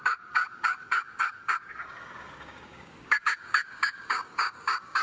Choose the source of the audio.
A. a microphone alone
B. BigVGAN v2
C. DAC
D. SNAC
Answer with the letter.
C